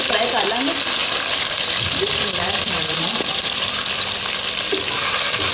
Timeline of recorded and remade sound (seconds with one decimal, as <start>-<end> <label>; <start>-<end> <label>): 0.0-1.0 recorded; 1.0-4.3 remade; 4.3-5.5 recorded